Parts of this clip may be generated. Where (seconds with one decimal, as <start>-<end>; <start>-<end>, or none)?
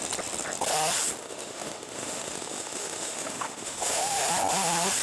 1.2-4.2